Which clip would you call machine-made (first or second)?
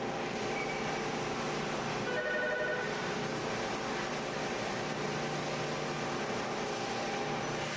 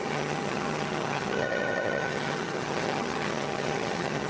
second